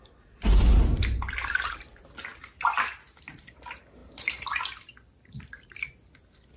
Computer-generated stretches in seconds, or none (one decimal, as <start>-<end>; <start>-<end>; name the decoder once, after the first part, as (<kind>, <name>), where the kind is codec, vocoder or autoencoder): none